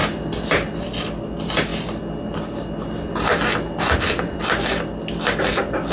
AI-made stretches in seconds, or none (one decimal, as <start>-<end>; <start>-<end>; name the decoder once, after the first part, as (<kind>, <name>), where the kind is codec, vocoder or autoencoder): none